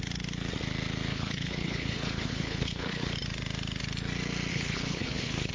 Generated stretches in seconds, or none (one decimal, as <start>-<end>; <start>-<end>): 1.1-3.1; 4.5-5.5